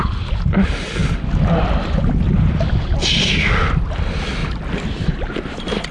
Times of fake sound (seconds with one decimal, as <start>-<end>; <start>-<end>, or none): none